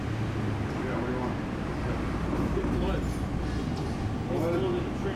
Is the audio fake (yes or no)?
no